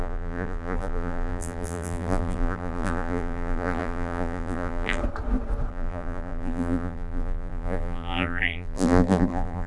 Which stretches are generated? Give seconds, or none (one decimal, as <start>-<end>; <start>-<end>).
0.0-5.0; 5.7-9.7